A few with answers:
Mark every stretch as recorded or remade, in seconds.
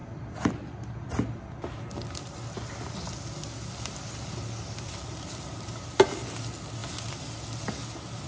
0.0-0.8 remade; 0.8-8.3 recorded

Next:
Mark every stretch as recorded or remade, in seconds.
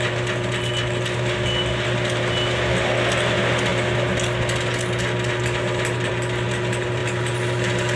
0.0-8.0 recorded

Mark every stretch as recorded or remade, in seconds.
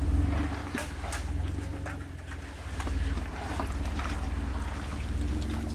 0.0-5.7 recorded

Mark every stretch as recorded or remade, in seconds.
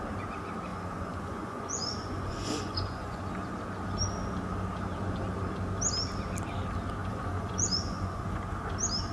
0.0-0.7 recorded; 0.7-3.2 remade; 3.2-7.0 recorded; 7.0-8.4 remade; 8.4-9.1 recorded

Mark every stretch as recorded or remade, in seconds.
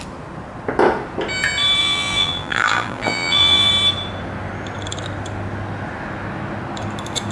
0.0-1.8 recorded; 1.8-3.7 remade; 3.7-7.3 recorded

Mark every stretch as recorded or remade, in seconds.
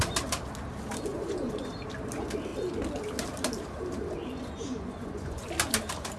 0.0-1.1 recorded; 1.1-1.7 remade; 1.7-4.2 recorded; 4.2-5.5 remade; 5.5-6.2 recorded